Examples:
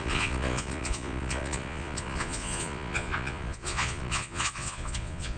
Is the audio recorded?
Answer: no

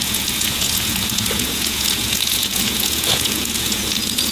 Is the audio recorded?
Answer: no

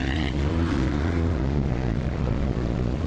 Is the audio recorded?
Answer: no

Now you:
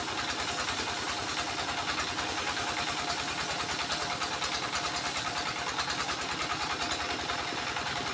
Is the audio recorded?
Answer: yes